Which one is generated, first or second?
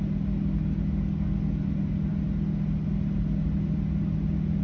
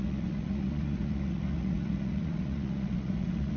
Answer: second